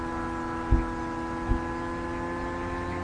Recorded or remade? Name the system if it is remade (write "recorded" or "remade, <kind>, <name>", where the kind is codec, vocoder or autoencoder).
recorded